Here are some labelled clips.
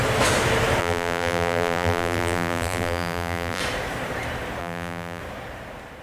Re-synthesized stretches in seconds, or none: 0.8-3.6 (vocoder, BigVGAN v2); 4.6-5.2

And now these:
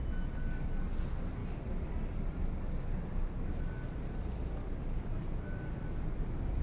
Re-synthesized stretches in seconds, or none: none

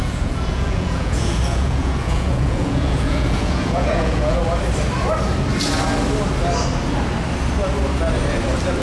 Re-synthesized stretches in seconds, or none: 0.0-4.4 (vocoder, Vocos)